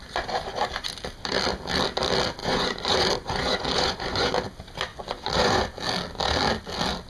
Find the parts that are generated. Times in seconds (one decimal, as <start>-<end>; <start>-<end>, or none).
2.4-4.3; 4.9-5.8